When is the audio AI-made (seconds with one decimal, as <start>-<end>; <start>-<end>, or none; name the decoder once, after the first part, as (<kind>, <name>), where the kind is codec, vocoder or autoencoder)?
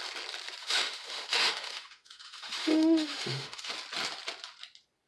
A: 0.6-3.7 (autoencoder, DAC-VAE)